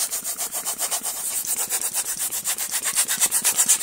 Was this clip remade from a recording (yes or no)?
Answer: yes